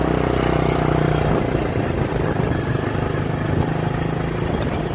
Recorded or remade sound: recorded